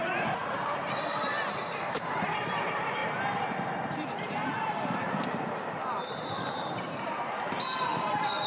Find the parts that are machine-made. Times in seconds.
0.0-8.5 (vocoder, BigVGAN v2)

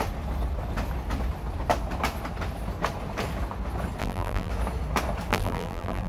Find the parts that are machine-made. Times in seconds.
4.0-4.5 (vocoder, BigVGAN v2); 5.3-6.1

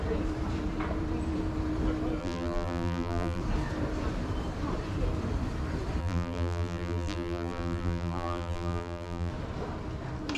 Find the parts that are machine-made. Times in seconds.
2.2-3.4 (vocoder, BigVGAN v2); 6.0-9.3

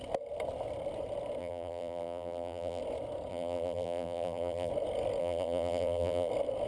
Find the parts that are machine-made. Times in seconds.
1.4-2.8 (vocoder, BigVGAN v2); 3.3-4.7; 5.2-6.3

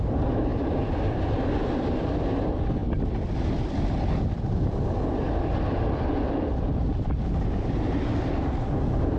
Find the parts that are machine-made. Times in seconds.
none

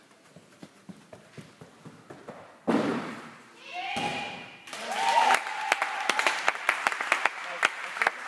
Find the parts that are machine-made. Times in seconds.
2.9-3.5 (vocoder, BigVGAN v2); 4.1-8.3

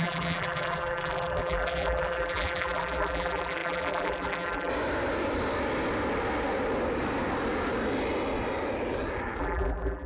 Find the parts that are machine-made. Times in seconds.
0.0-4.7 (vocoder, BigVGAN v2); 9.4-10.1